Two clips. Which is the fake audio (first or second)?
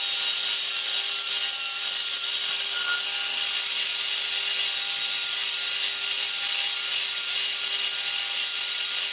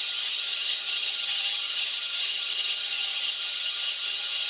second